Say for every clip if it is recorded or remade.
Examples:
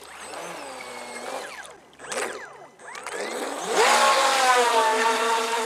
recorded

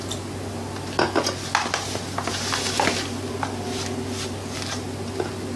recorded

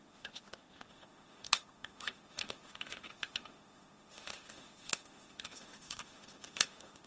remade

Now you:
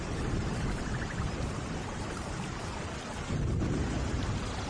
recorded